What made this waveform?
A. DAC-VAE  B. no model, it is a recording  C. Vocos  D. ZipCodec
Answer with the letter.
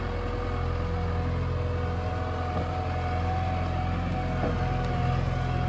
B